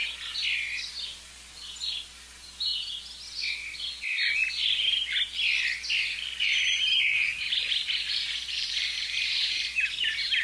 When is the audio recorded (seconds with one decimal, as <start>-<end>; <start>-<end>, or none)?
0.0-6.4